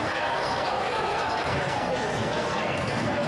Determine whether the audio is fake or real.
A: fake